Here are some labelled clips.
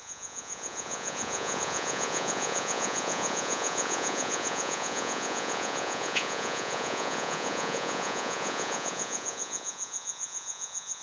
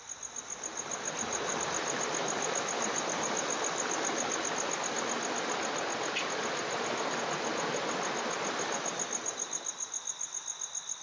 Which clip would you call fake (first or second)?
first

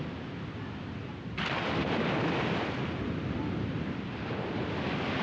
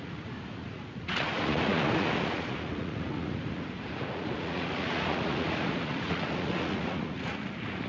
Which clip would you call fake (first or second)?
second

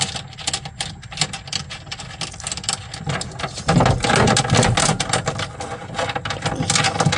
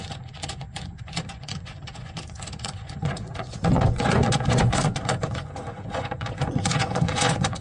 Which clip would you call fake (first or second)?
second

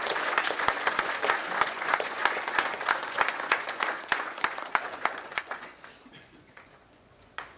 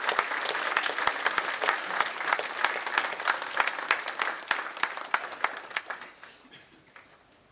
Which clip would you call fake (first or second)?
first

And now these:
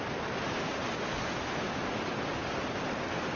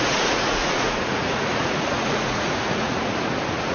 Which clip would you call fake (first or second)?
second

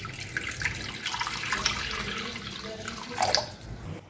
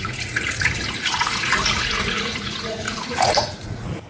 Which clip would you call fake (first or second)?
second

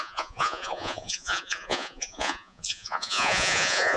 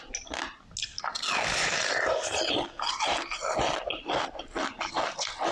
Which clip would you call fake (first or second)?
first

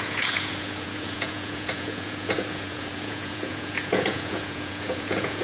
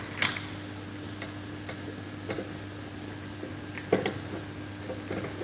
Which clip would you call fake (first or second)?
first